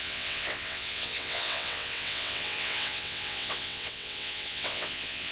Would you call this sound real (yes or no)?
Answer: no